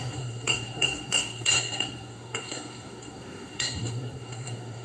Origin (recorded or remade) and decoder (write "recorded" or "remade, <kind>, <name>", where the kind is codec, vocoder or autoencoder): remade, codec, SNAC